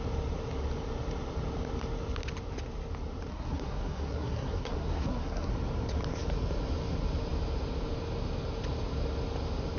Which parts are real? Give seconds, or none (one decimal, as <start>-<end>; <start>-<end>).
0.0-3.3; 5.5-9.8

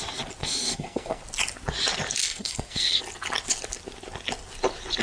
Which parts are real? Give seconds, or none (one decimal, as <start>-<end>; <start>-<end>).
0.0-0.4; 1.2-2.2; 3.0-5.0

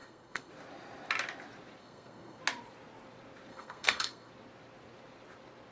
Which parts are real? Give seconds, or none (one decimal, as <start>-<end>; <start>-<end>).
0.5-1.8; 2.4-3.5; 4.3-5.7